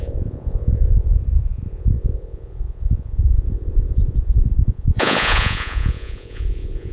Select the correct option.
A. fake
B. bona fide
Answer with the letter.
A